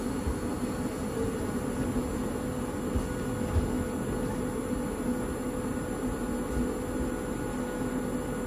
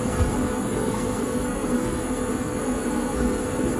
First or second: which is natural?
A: first